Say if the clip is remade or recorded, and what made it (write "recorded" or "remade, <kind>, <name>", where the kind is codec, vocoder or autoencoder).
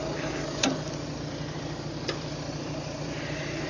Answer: recorded